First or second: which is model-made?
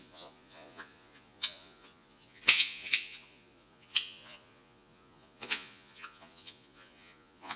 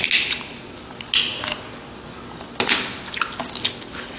first